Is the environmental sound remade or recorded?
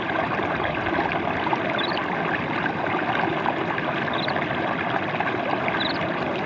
recorded